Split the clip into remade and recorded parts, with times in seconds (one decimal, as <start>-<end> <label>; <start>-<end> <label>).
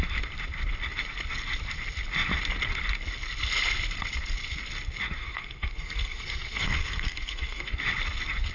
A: 0.0-5.2 recorded; 5.2-7.7 remade; 7.7-8.5 recorded